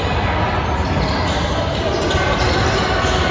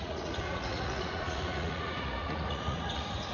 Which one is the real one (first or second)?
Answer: first